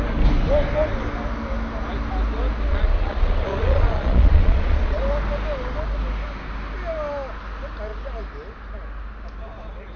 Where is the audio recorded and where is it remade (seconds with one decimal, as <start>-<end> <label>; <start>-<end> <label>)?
0.0-2.7 recorded; 2.7-5.0 remade; 5.0-10.0 recorded